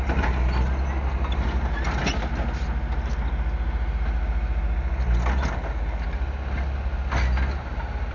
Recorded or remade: recorded